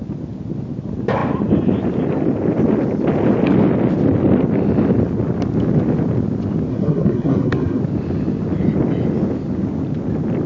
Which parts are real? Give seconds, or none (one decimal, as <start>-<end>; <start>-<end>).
0.0-6.7; 7.8-10.5